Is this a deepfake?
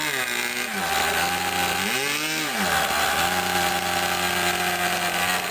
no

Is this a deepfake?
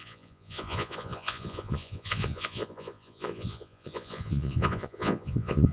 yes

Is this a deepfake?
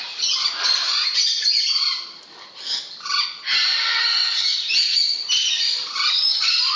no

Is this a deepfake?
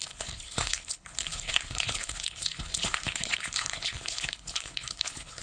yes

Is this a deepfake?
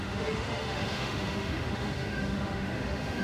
yes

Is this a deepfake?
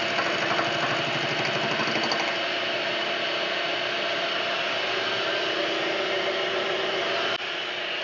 no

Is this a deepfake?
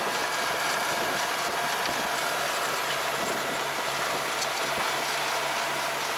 no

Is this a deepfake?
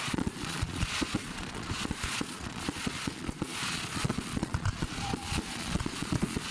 yes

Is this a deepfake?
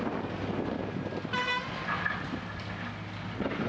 no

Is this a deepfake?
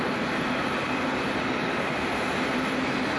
yes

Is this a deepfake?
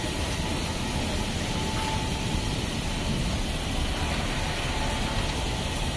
no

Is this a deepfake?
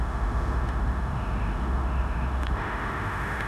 yes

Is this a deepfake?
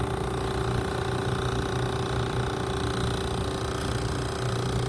no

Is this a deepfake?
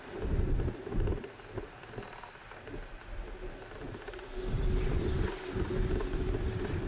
no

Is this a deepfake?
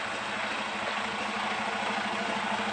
no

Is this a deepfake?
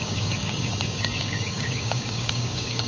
yes